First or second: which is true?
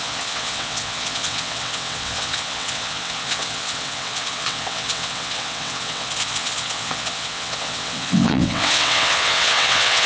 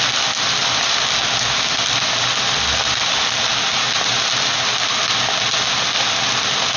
second